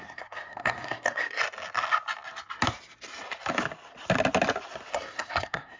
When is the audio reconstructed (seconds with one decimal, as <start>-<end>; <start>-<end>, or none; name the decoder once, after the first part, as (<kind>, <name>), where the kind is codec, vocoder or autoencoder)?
0.0-1.4 (codec, SNAC); 4.9-5.8